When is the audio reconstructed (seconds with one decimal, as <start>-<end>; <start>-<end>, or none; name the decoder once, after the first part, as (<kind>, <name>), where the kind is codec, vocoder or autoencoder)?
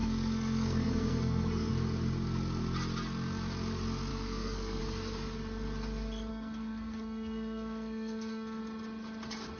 0.0-1.7 (codec, SNAC); 4.1-4.8; 6.3-8.6